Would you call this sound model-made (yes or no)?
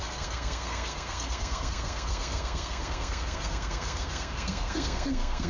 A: yes